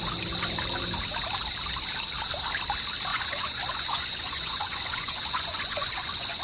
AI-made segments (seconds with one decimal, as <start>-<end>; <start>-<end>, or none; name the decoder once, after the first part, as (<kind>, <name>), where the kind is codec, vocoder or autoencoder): 3.1-6.4 (vocoder, Vocos)